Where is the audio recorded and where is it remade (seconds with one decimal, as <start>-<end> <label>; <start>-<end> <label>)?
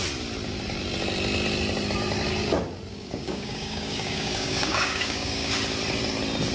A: 0.0-2.9 recorded; 2.9-5.5 remade; 5.5-6.5 recorded